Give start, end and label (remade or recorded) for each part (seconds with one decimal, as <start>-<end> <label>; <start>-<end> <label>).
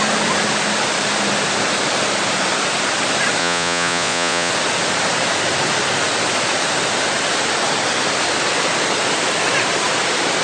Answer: 0.0-3.4 recorded; 3.4-4.5 remade; 4.5-10.4 recorded